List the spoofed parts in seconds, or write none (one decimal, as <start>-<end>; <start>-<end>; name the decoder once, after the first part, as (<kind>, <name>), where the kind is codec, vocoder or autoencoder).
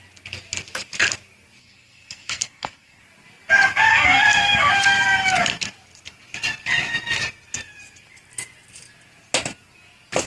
1.6-3.0 (codec, SNAC); 3.9-4.7